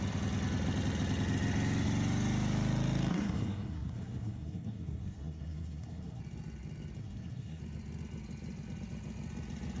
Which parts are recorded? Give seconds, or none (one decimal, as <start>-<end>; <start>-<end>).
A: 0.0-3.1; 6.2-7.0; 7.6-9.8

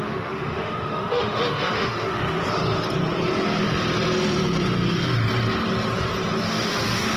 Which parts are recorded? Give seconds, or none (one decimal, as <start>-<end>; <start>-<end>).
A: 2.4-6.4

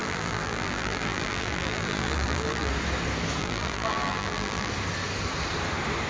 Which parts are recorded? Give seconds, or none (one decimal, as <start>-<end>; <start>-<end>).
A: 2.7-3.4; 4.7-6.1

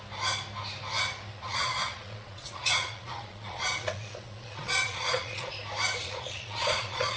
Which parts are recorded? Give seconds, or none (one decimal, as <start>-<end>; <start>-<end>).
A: 0.0-1.3; 5.5-6.0

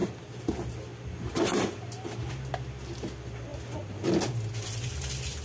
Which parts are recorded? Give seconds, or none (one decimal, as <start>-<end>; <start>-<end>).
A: 0.5-0.9; 2.3-5.4

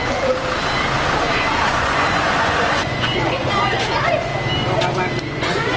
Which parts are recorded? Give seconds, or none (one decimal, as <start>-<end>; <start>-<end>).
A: 0.0-1.2; 4.3-5.2

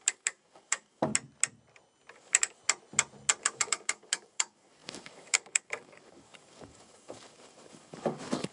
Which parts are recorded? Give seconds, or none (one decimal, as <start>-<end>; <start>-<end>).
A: 1.1-2.1; 2.6-3.4

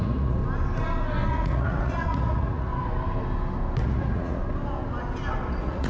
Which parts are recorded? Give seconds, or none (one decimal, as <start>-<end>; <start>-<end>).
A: 0.4-1.3; 2.7-3.8; 4.4-5.5